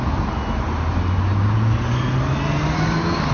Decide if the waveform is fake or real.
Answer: real